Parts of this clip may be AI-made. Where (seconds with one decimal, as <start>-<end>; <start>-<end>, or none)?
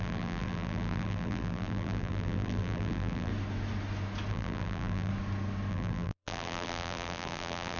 0.0-3.3; 4.3-5.1; 5.7-7.8